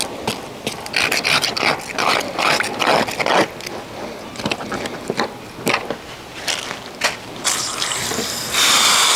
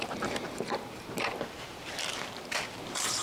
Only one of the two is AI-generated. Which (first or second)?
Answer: second